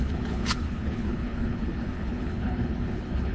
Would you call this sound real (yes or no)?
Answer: no